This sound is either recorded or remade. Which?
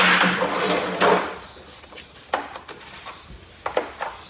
recorded